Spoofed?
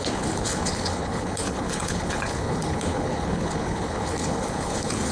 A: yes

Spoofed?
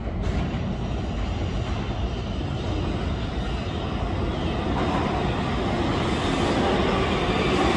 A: no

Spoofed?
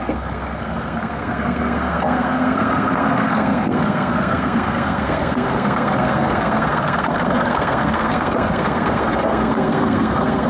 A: yes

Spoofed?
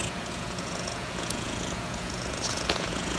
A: yes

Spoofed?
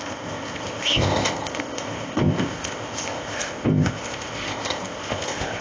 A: yes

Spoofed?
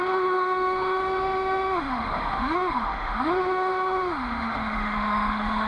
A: yes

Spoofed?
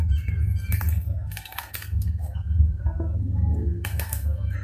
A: yes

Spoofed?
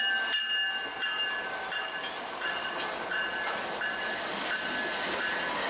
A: no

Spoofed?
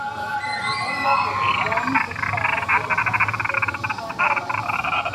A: no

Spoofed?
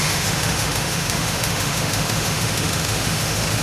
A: yes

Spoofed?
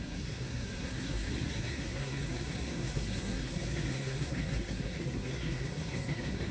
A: yes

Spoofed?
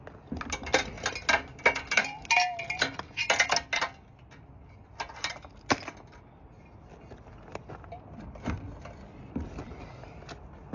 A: no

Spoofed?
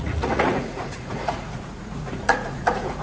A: yes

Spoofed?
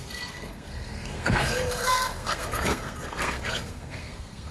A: yes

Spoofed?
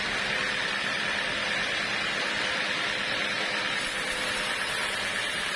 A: no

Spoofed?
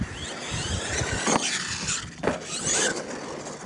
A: no